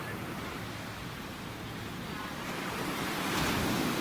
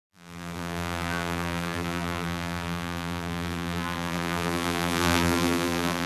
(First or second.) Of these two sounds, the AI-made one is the second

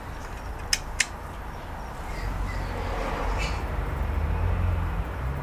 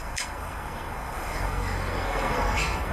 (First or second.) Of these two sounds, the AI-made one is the second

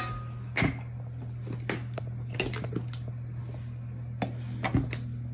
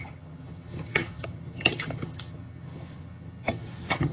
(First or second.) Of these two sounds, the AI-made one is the second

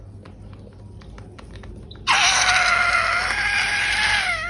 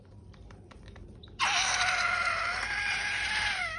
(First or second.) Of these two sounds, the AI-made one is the second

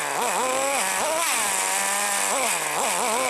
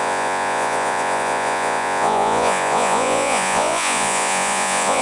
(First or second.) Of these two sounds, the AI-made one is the second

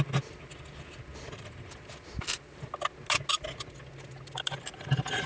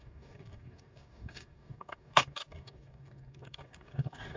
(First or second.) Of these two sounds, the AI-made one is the second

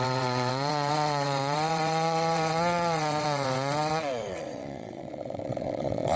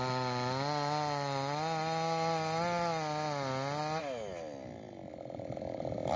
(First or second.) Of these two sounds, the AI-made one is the first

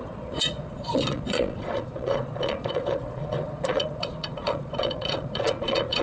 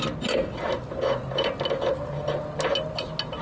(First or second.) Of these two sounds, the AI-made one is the first